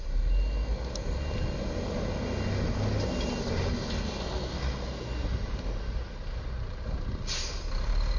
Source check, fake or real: real